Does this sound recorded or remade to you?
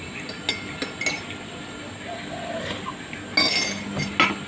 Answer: recorded